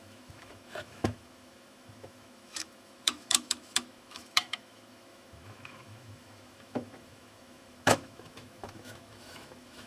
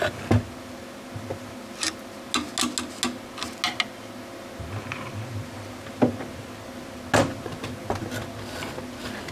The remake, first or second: first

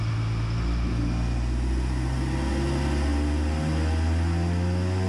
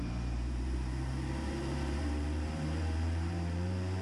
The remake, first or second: second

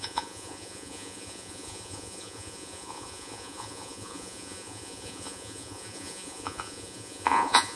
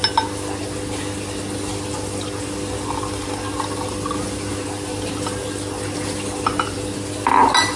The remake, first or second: first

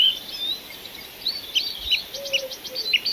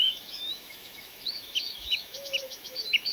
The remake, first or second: second